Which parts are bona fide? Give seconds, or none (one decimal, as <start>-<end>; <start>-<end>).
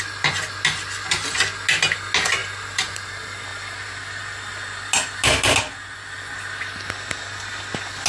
0.0-2.4; 3.1-3.5; 4.2-8.1